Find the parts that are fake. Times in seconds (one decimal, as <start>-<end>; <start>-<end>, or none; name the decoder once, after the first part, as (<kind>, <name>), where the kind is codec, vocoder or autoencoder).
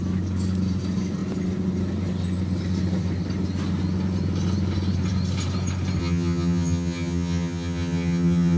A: 6.0-8.6 (vocoder, HiFi-GAN)